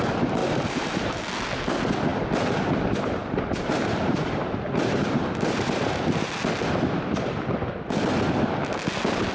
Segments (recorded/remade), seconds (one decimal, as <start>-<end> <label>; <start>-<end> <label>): 0.0-0.4 recorded; 0.4-1.2 remade; 1.2-3.2 recorded; 3.2-6.3 remade; 6.3-9.3 recorded